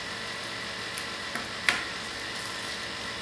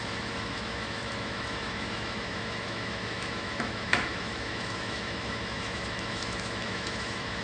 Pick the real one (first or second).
first